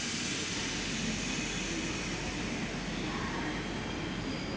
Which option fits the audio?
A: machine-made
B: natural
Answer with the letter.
B